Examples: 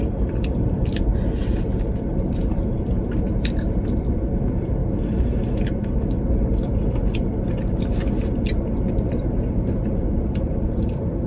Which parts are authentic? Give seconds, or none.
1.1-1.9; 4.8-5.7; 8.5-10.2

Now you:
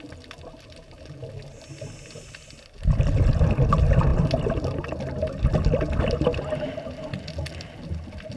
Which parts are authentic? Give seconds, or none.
0.0-8.4

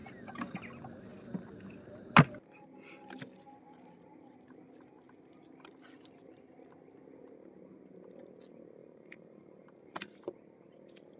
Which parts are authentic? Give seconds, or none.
0.6-8.8; 10.2-11.2

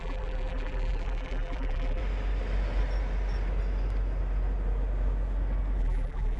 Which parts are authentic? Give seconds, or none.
2.0-5.8

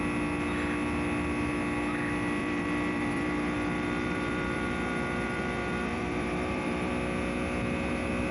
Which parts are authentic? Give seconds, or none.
0.0-2.4; 6.9-8.3

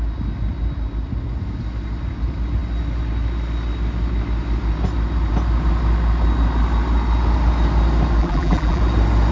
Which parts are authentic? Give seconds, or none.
0.0-8.2; 8.8-9.3

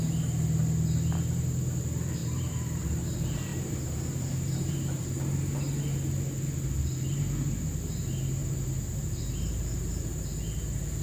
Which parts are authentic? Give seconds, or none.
0.0-2.2; 3.0-3.5; 5.0-8.4; 10.3-11.0